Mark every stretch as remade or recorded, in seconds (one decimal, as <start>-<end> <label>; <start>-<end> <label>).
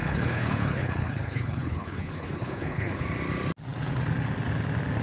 0.0-3.0 remade; 3.0-5.0 recorded